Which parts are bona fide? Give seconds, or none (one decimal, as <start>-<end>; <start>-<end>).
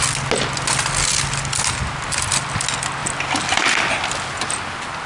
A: 0.0-5.1